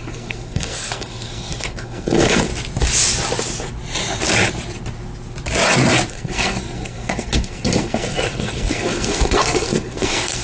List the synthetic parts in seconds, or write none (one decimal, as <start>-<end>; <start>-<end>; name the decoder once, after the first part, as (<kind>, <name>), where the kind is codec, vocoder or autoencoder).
0.0-2.5 (codec, SNAC); 6.1-10.4